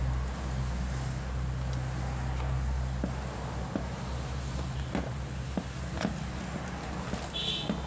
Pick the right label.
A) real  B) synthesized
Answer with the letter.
A